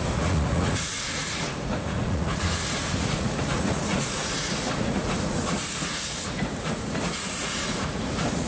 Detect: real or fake fake